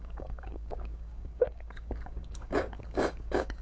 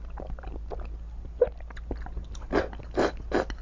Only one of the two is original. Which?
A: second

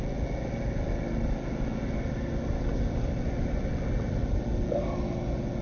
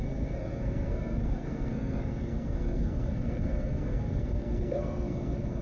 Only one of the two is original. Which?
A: first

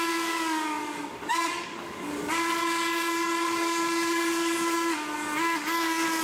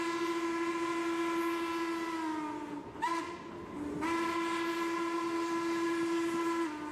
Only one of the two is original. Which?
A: second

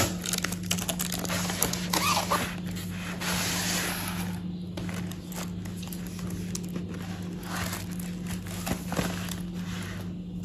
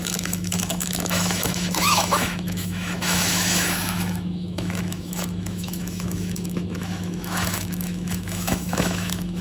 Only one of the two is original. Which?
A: first